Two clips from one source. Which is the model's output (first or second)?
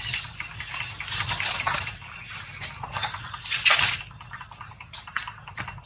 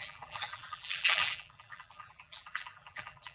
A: second